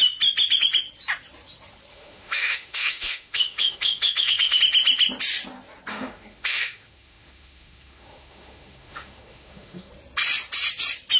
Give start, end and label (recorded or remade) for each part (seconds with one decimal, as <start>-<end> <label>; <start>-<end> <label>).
0.0-1.9 recorded; 1.9-4.6 remade; 4.6-5.9 recorded; 5.9-9.9 remade; 9.9-11.2 recorded